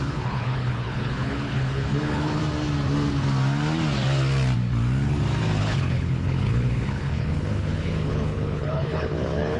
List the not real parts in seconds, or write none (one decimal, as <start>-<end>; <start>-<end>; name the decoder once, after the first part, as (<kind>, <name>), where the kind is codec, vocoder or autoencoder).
0.0-2.4 (codec, HILCodec); 5.6-9.6